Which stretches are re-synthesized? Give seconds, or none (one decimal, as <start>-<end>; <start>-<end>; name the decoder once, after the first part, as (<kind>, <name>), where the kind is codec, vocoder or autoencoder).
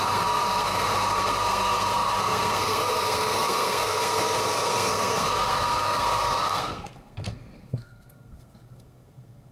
0.0-9.5 (codec, SNAC)